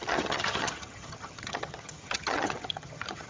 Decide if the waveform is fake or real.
fake